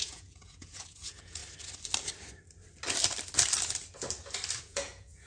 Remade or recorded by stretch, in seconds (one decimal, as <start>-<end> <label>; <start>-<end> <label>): 0.0-1.4 remade; 1.4-4.6 recorded; 4.6-5.3 remade